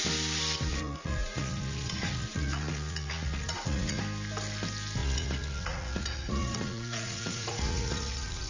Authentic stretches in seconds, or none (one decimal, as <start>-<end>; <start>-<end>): 0.0-0.7; 4.0-5.0